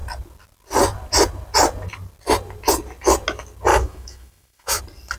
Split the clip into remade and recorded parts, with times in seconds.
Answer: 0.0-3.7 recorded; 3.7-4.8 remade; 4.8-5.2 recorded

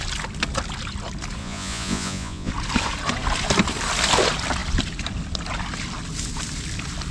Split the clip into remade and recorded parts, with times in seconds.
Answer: 0.0-1.4 recorded; 1.4-2.5 remade; 2.5-7.1 recorded

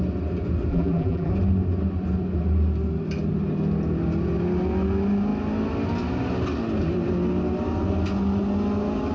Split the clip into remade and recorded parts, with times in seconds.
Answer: 0.0-0.7 recorded; 0.7-1.3 remade; 1.3-9.1 recorded

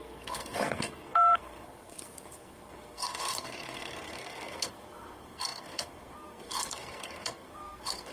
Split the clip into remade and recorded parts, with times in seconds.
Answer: 0.0-8.1 remade

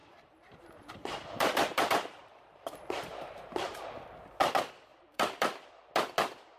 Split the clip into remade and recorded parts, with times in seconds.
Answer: 0.0-4.0 remade; 4.0-4.9 recorded; 4.9-5.7 remade; 5.7-6.6 recorded

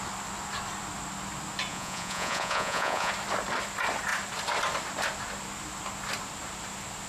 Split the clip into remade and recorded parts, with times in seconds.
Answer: 0.0-1.7 recorded; 1.7-3.1 remade; 3.1-7.1 recorded

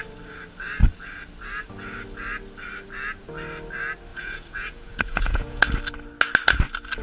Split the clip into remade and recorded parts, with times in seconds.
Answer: 0.0-4.1 recorded; 4.1-5.6 remade; 5.6-7.0 recorded

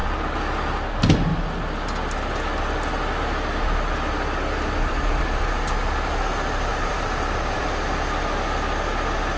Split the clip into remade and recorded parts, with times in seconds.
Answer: 0.0-6.7 recorded; 6.7-7.8 remade; 7.8-9.4 recorded